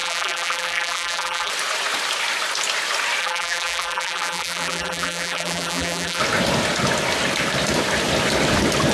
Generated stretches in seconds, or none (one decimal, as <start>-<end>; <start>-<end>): 0.0-1.5; 3.2-6.2